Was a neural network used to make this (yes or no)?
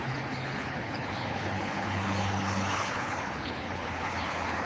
yes